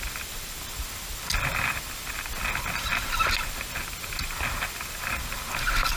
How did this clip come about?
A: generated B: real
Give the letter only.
B